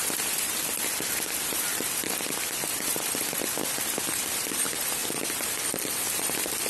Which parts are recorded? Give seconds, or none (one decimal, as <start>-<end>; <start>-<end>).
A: 5.0-5.7